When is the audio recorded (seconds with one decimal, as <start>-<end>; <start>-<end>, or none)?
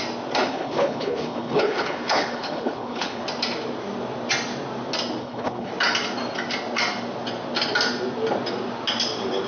0.0-0.4; 3.2-5.2; 5.7-9.5